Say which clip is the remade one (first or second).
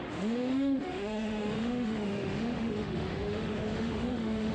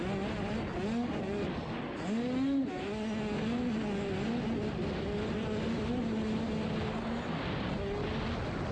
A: first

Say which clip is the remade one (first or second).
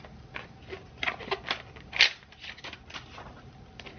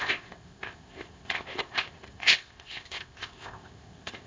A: second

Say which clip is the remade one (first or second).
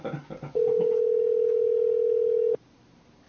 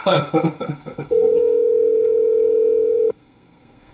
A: second